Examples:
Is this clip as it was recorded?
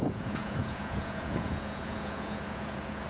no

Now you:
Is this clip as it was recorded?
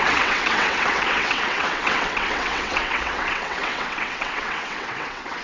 no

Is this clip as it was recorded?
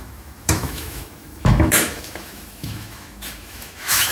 no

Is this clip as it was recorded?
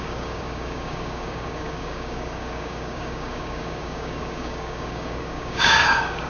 no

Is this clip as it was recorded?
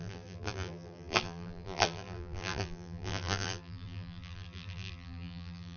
no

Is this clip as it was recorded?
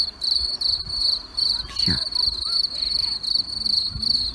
yes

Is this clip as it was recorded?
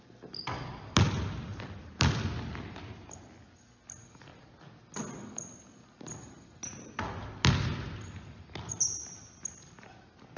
yes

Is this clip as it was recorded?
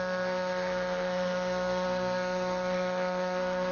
no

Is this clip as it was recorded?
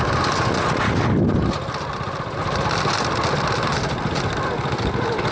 yes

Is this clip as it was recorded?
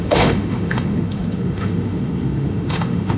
no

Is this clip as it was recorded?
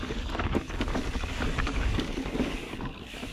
no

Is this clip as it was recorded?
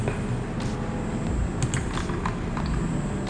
yes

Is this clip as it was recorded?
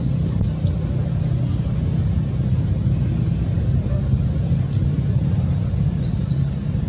yes